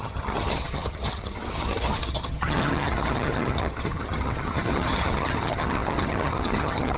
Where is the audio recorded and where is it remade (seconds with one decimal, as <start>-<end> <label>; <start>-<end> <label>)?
0.0-7.0 remade